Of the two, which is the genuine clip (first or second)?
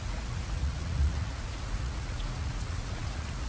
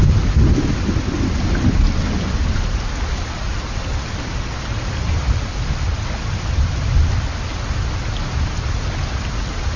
second